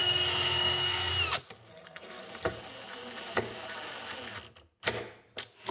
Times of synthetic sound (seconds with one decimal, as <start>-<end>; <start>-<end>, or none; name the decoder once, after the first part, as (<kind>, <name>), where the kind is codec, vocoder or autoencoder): 0.0-1.1 (codec, SNAC); 1.7-2.2